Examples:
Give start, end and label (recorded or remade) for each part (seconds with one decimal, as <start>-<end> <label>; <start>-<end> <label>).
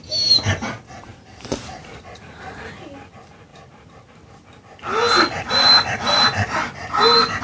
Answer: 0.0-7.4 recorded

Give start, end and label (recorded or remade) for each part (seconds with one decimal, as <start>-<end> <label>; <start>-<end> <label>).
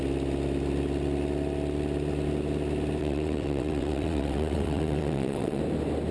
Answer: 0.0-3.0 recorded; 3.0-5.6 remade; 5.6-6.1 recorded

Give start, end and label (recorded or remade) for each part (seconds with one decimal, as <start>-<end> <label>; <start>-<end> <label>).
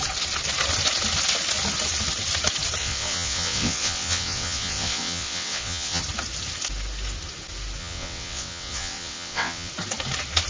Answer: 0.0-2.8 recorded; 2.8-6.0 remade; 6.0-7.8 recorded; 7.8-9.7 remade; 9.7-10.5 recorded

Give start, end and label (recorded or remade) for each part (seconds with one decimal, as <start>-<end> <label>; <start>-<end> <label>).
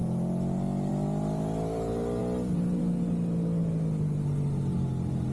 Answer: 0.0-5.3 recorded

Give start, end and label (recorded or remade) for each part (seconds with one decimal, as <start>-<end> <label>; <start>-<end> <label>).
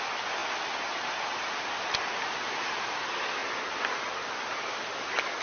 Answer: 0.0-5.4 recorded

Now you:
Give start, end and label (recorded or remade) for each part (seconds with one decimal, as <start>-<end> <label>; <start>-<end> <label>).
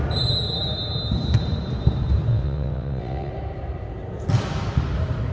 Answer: 0.0-2.3 recorded; 2.3-3.3 remade; 3.3-5.3 recorded